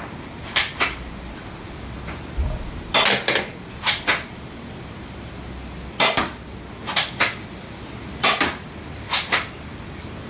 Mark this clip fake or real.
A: real